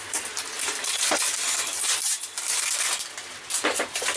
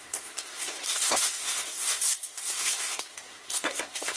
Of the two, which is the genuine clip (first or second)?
first